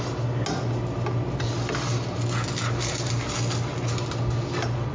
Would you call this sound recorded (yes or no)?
yes